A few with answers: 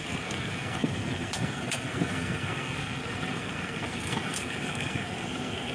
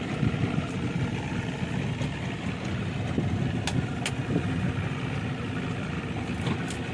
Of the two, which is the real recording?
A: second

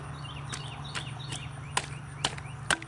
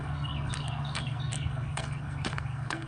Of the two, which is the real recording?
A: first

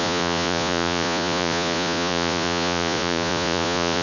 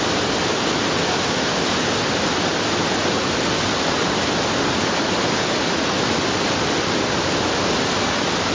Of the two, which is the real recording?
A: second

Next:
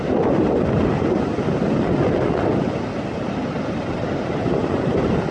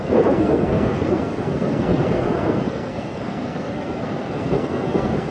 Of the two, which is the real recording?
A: first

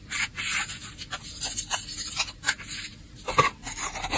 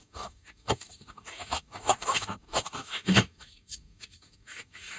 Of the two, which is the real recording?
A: first